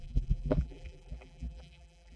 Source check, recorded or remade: remade